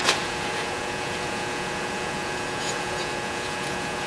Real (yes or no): no